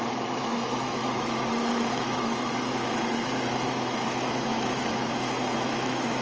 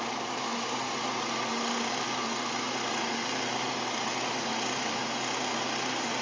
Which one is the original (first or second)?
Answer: second